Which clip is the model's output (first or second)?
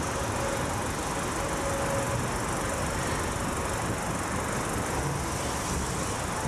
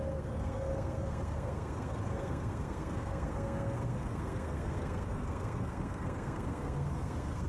second